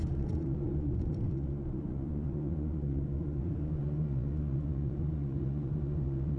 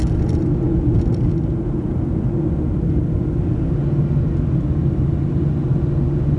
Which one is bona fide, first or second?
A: second